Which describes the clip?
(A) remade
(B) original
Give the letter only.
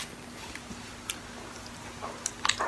B